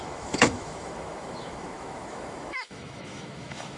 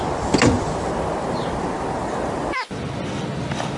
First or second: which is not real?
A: first